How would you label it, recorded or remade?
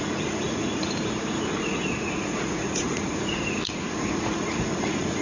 remade